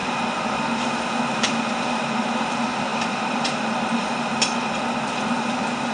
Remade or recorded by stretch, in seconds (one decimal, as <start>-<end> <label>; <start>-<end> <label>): 0.0-2.9 recorded; 2.9-4.8 remade; 4.8-5.9 recorded